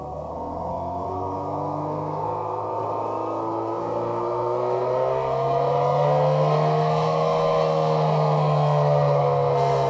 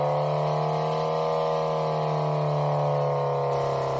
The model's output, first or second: first